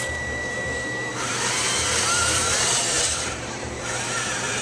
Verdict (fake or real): fake